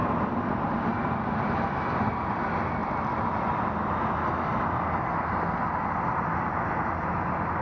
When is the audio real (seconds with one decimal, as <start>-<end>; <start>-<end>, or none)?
0.0-7.6